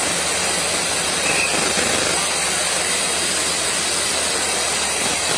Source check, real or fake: real